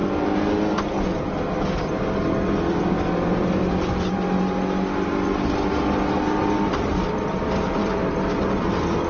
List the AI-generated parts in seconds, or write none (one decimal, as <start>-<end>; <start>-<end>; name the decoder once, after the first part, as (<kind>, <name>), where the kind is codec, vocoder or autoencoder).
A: 6.4-7.0 (vocoder, BigVGAN v2)